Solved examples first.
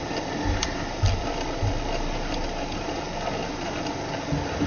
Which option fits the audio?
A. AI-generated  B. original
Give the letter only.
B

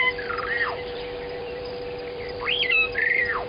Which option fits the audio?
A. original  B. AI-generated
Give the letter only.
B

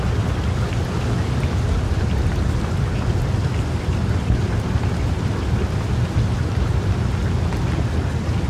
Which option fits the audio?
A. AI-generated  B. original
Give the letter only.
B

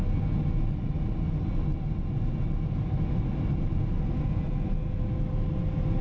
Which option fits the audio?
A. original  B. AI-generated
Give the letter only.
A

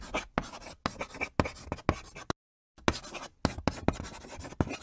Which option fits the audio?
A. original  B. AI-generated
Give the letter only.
A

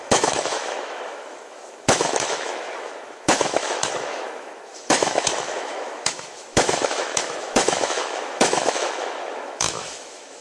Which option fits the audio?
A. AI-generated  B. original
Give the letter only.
A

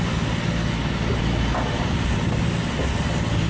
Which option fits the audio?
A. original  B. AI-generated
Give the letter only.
A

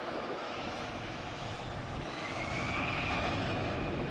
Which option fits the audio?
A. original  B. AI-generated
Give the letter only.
B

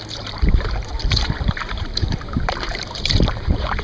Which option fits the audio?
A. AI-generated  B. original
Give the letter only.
A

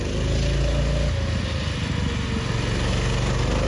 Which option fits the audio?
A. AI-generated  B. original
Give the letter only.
B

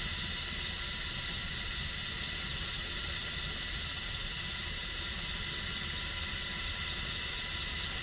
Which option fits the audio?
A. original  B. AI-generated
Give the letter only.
A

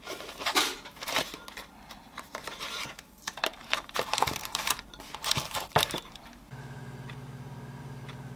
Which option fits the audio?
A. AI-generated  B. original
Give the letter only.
A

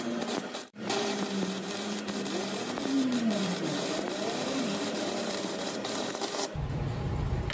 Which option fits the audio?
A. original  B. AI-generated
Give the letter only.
B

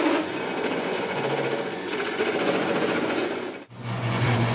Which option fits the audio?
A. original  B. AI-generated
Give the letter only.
B